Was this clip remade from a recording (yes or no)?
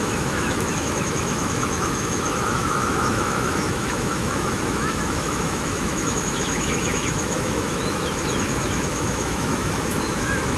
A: yes